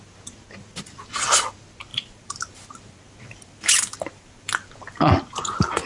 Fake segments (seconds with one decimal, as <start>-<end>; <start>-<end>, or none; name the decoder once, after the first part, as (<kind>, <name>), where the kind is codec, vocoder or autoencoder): 1.9-5.1 (vocoder, BigVGAN v2)